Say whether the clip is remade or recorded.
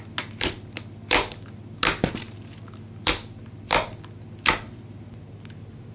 recorded